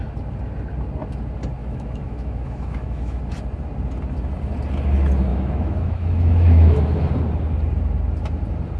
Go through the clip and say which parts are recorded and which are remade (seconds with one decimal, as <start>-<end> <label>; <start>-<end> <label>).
0.0-1.6 recorded; 1.6-3.2 remade; 3.2-5.3 recorded; 5.3-7.1 remade; 7.1-8.8 recorded